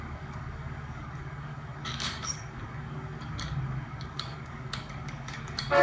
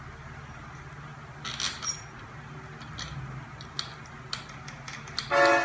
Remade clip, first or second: first